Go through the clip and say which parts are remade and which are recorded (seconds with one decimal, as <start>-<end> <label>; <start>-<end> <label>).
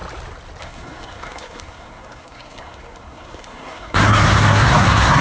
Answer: 0.0-0.6 recorded; 0.6-5.2 remade